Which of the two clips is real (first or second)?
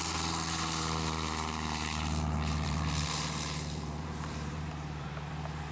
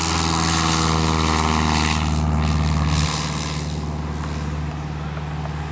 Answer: second